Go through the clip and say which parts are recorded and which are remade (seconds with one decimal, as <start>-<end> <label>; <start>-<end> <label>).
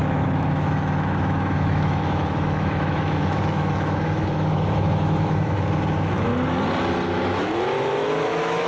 0.0-6.3 remade; 6.3-7.1 recorded; 7.1-8.7 remade